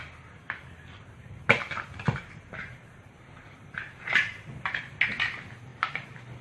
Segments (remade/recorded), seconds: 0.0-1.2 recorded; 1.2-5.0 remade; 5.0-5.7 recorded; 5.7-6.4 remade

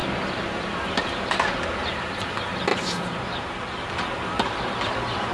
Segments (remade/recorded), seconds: 0.0-2.7 recorded; 2.7-3.9 remade; 3.9-5.3 recorded

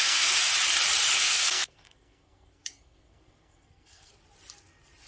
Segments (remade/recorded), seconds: 0.0-0.5 remade; 0.5-1.2 recorded; 1.2-4.1 remade; 4.1-5.1 recorded

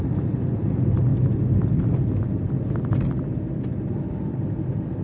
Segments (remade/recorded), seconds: 0.0-5.0 recorded

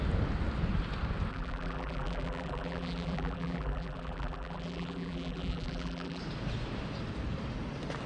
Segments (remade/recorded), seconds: 0.0-1.3 recorded; 1.3-6.2 remade; 6.2-8.1 recorded